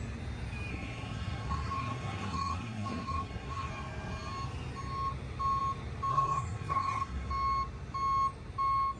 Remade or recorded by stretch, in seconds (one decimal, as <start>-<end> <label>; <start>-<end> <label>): 0.0-0.7 recorded; 0.7-3.7 remade; 3.7-6.1 recorded; 6.1-7.3 remade; 7.3-9.0 recorded